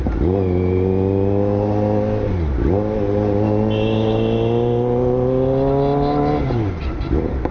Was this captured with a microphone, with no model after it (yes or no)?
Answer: yes